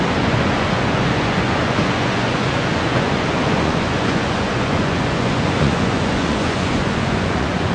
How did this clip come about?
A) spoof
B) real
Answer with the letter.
A